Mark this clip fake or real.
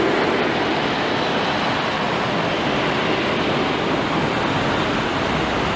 real